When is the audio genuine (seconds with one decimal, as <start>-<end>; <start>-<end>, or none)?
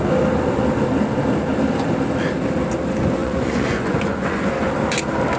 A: 0.0-3.2; 4.5-5.4